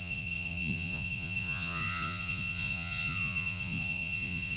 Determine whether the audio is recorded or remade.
remade